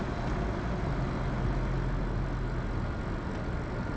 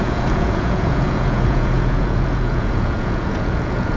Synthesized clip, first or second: second